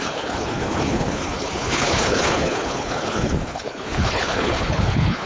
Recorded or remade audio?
remade